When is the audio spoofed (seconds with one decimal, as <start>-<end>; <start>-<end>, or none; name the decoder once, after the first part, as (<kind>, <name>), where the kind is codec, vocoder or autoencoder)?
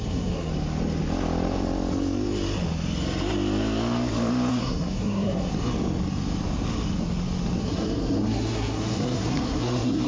0.0-0.5 (codec, SNAC); 4.5-5.5; 7.6-10.1